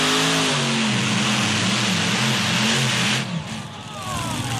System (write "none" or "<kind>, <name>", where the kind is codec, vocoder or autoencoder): none